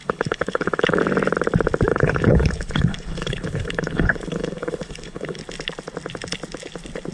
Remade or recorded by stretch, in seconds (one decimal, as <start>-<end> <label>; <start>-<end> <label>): 0.0-1.0 remade; 1.0-1.9 recorded; 1.9-5.4 remade; 5.4-7.1 recorded